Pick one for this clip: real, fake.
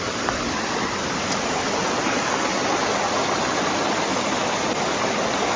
real